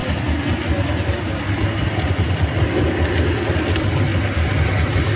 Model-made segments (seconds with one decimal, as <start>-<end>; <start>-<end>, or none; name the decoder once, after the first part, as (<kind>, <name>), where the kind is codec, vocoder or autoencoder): none